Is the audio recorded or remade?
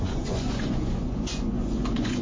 remade